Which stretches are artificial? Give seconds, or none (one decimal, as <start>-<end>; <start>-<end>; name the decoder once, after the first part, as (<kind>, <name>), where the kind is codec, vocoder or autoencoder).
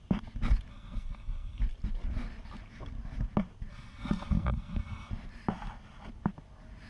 0.7-1.6 (codec, SNAC); 3.7-5.1